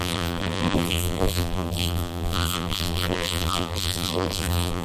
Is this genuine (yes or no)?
no